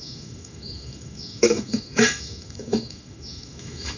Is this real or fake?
fake